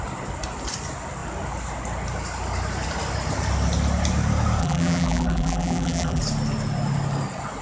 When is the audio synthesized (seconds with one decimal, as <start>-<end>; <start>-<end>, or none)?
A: 4.6-6.2